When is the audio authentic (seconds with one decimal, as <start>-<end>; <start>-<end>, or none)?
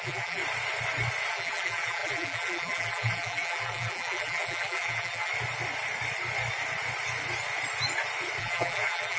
0.4-1.3; 5.3-8.4